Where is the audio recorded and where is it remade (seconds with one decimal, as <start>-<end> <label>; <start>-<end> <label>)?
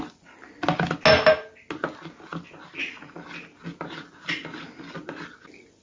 0.0-5.8 recorded